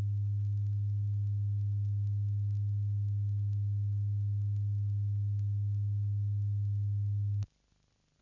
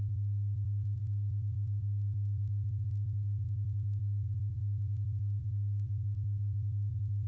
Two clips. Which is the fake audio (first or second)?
second